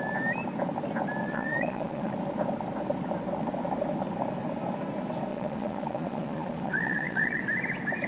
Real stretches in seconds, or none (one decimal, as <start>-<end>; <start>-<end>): 0.0-1.2; 2.1-5.3; 7.4-8.1